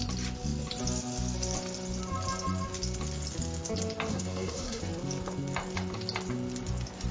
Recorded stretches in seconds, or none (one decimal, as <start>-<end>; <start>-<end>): 0.0-4.1; 4.8-7.1